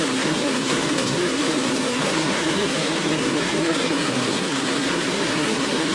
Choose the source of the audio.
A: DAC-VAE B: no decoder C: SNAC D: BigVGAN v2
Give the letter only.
C